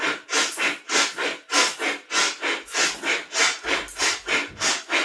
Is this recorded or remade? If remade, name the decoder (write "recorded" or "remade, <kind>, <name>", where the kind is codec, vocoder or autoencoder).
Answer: recorded